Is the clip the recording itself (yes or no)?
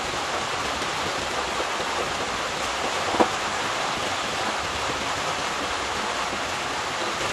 yes